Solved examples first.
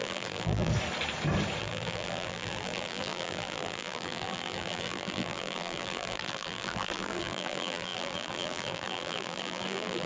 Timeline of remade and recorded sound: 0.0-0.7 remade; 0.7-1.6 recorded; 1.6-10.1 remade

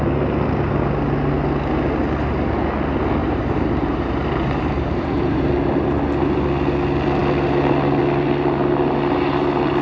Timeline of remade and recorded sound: 0.0-3.2 recorded; 3.2-5.4 remade; 5.4-9.8 recorded

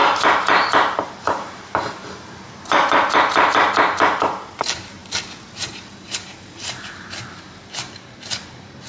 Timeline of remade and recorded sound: 0.0-8.9 remade

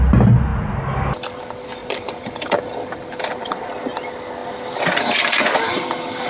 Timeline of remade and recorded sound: 0.0-1.8 recorded; 1.8-3.7 remade; 3.7-6.3 recorded